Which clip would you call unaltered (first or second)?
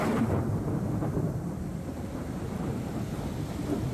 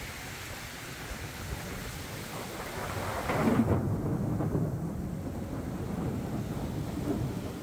second